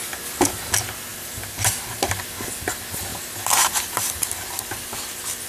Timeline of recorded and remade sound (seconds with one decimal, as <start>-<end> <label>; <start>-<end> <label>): 0.0-0.7 remade; 0.7-1.1 recorded; 1.1-2.2 remade; 2.2-3.1 recorded; 3.1-4.6 remade; 4.6-5.5 recorded